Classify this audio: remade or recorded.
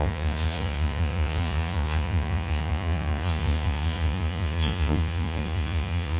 remade